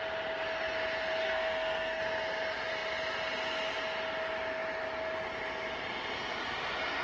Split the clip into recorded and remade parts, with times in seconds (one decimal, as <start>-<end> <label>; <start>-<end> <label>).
0.0-1.2 recorded; 1.2-2.0 remade; 2.0-7.0 recorded